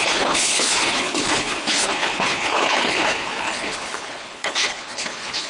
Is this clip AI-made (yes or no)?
yes